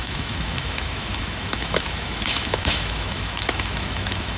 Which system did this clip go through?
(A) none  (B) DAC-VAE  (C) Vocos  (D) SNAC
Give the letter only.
B